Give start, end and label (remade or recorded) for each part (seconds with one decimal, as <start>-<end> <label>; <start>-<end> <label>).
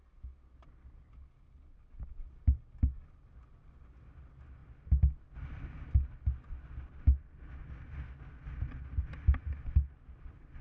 0.0-10.6 recorded